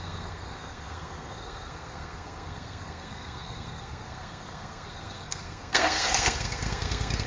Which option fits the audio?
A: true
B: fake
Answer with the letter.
B